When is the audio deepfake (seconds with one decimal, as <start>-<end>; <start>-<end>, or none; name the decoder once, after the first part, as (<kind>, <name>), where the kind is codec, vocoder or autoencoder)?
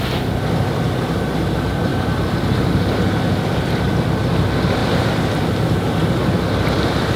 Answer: 1.9-2.6 (vocoder, BigVGAN v2); 4.8-5.5